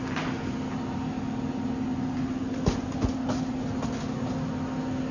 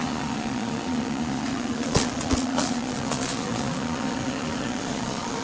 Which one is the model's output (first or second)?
second